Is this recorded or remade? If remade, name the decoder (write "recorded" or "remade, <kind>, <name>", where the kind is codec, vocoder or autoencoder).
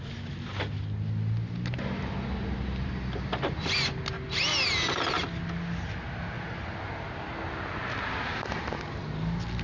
recorded